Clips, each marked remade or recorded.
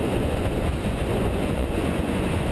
remade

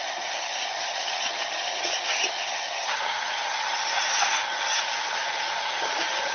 remade